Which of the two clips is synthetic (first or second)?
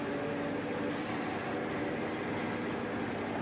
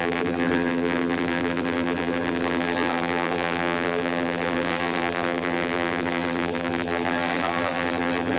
second